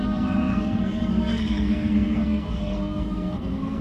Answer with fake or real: fake